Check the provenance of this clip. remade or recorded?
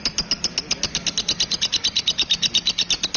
recorded